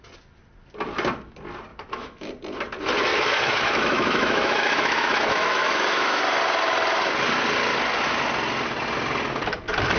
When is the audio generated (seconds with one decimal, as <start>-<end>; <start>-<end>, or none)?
1.7-2.3; 3.1-6.2